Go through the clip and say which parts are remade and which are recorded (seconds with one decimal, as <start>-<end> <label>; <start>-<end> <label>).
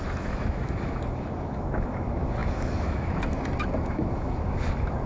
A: 0.0-5.1 remade